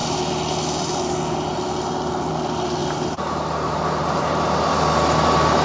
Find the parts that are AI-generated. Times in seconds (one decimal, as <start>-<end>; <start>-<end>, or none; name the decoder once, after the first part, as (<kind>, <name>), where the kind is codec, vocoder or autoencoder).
2.8-4.8 (vocoder, BigVGAN v2)